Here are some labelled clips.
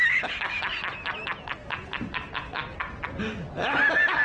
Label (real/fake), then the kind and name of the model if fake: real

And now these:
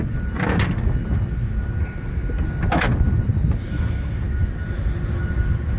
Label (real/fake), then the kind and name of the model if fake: real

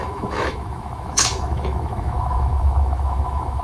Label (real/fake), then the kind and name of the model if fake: fake, autoencoder, DAC-VAE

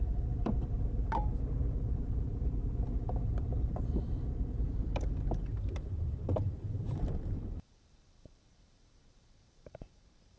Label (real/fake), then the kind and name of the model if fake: fake, vocoder, BigVGAN v2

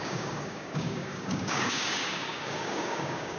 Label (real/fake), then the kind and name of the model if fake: fake, codec, DAC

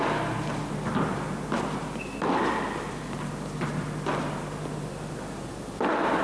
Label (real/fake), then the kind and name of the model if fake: real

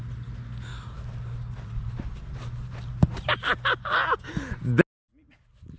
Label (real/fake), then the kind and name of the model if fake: real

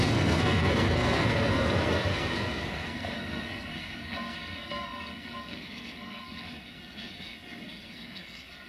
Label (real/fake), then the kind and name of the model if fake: fake, codec, SNAC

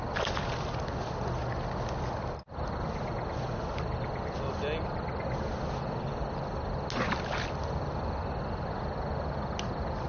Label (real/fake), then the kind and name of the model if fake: real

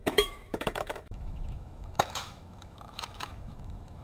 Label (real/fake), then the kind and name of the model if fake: fake, autoencoder, DAC-VAE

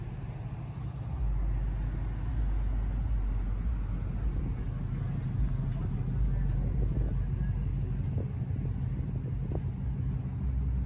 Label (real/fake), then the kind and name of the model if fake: real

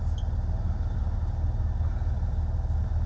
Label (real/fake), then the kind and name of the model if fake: real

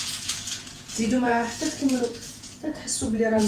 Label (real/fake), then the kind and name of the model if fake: fake, vocoder, Vocos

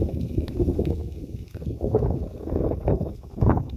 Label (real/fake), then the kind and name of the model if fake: fake, codec, SNAC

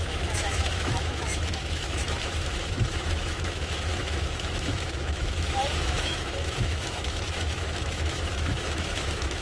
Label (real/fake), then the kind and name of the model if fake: fake, autoencoder, DAC-VAE